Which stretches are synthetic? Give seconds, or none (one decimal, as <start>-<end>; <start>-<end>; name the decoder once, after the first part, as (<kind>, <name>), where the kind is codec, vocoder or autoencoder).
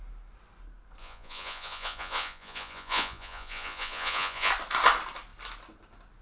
1.0-4.5 (vocoder, Vocos)